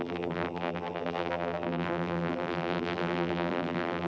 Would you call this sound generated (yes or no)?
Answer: yes